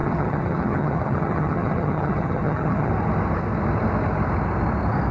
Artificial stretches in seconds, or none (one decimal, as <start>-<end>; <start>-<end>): 0.0-2.9